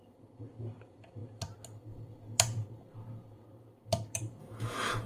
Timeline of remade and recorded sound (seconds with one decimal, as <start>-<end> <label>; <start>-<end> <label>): 0.0-4.4 recorded; 4.4-5.1 remade